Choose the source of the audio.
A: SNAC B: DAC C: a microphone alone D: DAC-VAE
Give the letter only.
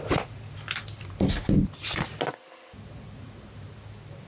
C